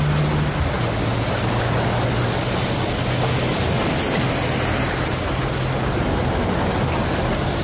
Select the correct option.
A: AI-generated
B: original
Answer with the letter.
B